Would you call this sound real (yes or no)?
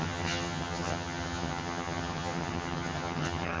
no